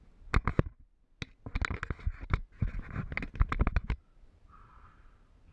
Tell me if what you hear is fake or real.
real